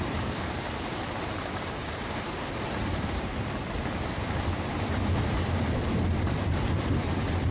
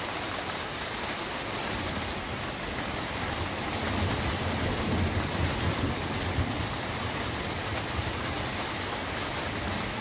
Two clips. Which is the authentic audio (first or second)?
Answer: second